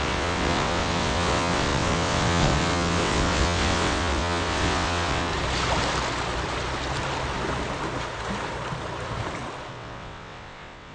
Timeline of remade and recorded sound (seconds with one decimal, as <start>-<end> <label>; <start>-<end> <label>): 0.0-5.3 remade; 5.3-9.7 recorded; 9.7-10.9 remade

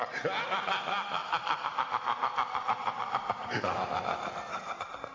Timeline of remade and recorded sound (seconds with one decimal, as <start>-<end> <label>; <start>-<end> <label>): 0.0-5.1 recorded

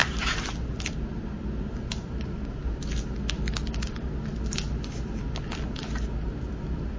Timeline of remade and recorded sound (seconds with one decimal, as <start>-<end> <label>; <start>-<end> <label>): 0.0-7.0 recorded